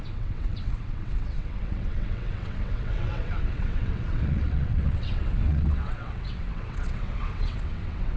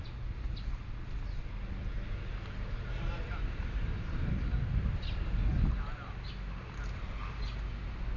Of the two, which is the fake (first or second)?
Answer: first